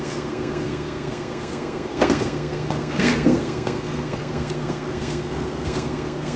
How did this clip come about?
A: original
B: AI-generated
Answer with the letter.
B